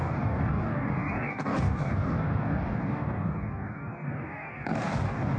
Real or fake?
fake